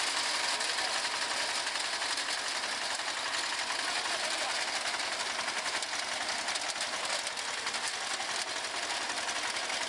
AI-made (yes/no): no